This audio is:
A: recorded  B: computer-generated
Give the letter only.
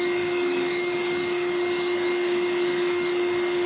B